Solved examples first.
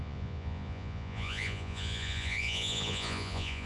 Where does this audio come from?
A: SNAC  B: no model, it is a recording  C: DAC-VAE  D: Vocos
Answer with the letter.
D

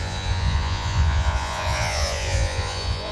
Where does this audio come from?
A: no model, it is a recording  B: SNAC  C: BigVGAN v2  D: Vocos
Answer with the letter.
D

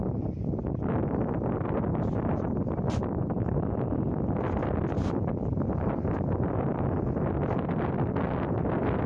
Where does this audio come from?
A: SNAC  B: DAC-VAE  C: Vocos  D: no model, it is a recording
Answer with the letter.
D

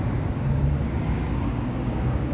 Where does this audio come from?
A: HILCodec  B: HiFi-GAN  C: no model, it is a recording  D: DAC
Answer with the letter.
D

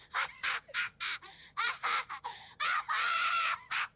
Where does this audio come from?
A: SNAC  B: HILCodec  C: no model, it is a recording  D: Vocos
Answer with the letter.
D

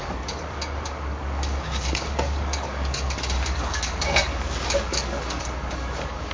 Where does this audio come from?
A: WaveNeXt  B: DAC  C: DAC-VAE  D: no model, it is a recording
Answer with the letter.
B